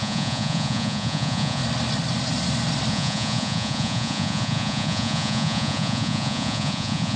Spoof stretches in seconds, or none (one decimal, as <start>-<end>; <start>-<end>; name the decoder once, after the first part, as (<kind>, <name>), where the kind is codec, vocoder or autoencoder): 0.0-1.6 (vocoder, Vocos); 2.9-7.2